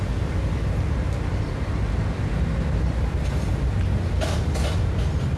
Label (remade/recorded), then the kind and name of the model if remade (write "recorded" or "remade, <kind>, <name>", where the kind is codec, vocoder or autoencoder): recorded